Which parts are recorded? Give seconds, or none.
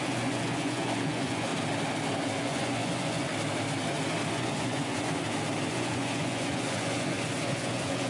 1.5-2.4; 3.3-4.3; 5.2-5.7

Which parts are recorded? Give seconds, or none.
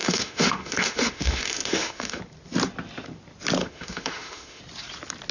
2.2-3.6; 4.6-5.3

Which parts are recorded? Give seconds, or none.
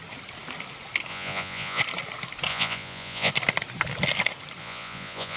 0.0-1.1; 1.8-2.5; 3.3-4.6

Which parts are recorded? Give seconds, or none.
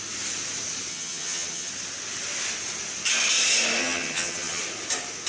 0.0-0.9; 1.7-3.8; 4.6-5.3